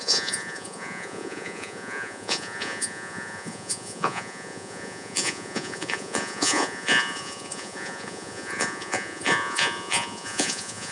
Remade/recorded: remade